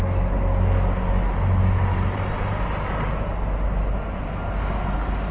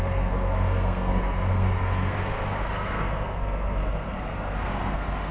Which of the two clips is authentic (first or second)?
first